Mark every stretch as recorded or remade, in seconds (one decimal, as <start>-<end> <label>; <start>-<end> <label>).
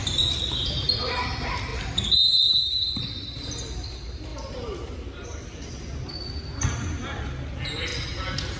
0.0-0.7 remade; 0.7-4.3 recorded; 4.3-5.7 remade; 5.7-7.9 recorded; 7.9-8.6 remade